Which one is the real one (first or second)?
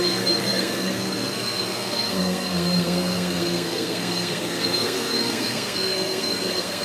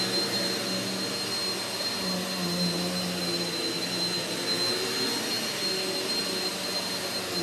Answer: second